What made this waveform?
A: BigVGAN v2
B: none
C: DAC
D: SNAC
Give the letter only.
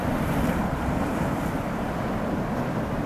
B